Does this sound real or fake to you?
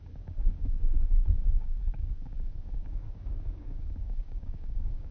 fake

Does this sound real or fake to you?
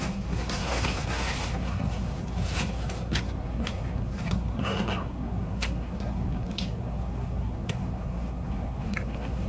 fake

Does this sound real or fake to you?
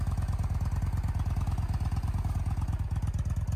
real